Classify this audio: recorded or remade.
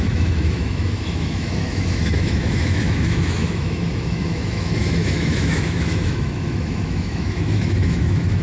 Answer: remade